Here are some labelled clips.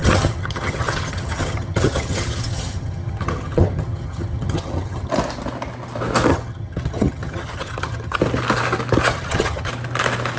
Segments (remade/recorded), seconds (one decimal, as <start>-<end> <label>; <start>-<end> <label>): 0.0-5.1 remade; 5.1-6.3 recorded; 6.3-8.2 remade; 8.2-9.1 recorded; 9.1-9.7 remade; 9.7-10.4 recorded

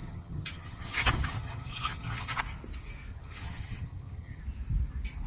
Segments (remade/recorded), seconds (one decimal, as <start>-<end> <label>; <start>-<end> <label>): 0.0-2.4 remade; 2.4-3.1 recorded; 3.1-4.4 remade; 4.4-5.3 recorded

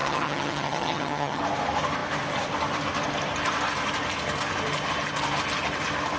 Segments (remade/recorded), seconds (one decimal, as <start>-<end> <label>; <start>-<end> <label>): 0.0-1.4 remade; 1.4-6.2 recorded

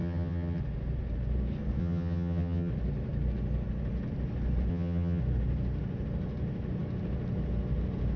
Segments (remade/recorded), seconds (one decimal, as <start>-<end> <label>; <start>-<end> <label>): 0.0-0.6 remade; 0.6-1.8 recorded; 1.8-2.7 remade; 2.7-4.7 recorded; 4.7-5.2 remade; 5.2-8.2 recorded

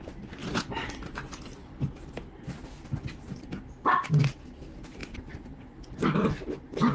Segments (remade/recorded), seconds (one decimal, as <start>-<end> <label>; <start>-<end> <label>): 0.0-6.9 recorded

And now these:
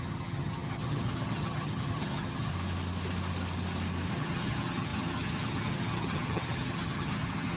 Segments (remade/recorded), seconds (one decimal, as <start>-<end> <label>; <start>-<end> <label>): 0.0-2.5 remade; 2.5-4.1 recorded; 4.1-7.6 remade